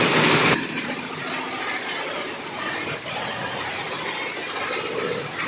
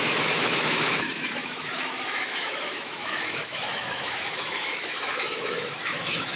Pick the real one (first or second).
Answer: first